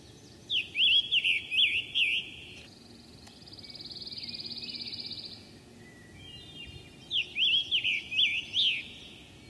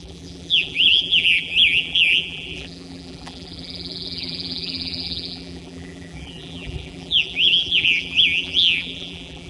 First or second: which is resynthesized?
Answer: second